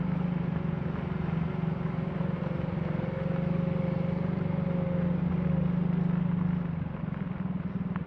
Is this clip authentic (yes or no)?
yes